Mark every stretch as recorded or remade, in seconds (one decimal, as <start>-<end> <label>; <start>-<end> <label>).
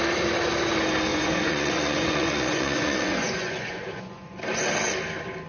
0.0-1.1 recorded; 1.1-4.4 remade; 4.4-5.5 recorded